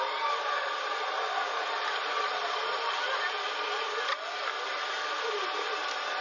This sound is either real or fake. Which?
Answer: real